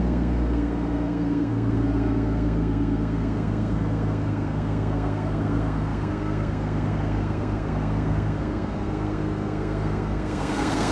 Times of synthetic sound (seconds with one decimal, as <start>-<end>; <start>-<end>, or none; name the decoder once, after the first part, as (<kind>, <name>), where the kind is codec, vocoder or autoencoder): 0.0-10.9 (codec, SNAC)